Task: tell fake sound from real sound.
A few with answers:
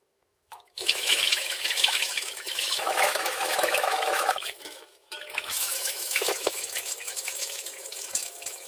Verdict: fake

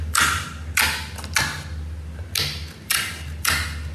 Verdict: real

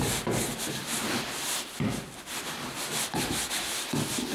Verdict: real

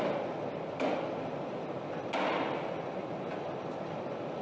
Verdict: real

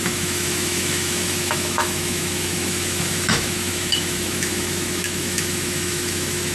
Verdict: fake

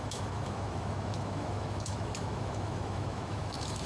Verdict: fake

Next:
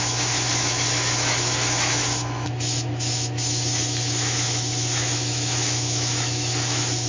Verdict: fake